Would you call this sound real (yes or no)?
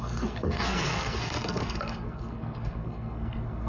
no